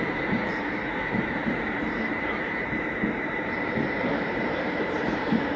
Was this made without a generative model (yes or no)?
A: no